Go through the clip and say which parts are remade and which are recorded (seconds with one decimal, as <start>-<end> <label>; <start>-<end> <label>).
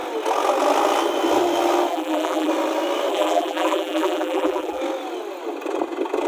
0.0-1.9 recorded; 1.9-2.5 remade; 2.5-3.1 recorded; 3.1-4.8 remade; 4.8-6.3 recorded